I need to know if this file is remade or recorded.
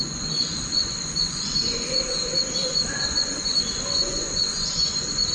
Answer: remade